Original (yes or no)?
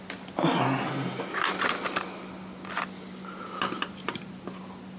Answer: yes